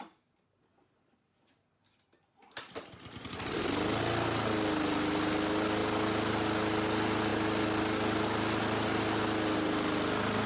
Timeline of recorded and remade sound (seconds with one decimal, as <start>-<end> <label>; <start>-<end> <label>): 0.0-10.5 recorded